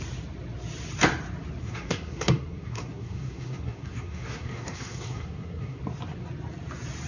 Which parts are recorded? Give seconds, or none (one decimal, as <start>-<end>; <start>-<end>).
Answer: 0.0-1.6; 5.8-7.1